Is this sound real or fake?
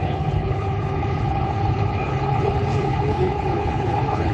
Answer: fake